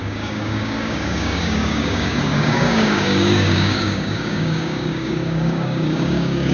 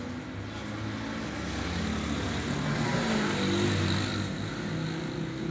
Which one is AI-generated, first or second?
first